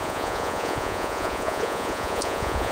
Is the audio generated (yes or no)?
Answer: yes